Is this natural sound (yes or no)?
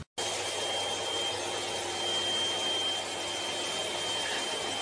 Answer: yes